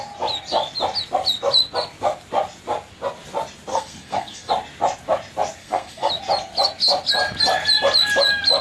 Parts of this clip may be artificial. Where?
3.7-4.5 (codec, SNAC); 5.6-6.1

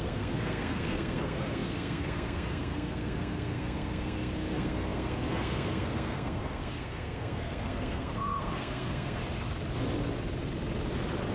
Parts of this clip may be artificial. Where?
0.0-9.2 (codec, SNAC)

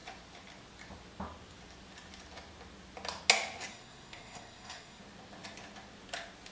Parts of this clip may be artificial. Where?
3.7-5.0 (codec, SNAC)

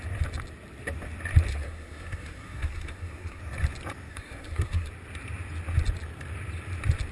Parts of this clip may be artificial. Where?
1.5-3.4 (codec, SNAC); 4.1-4.9

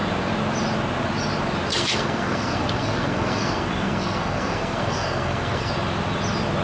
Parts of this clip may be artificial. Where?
1.7-5.7 (codec, SNAC)

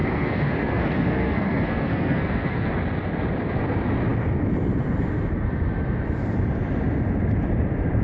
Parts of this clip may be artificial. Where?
0.0-2.7 (codec, SNAC)

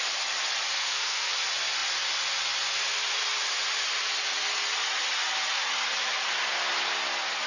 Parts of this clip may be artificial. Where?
0.8-1.3 (codec, SNAC)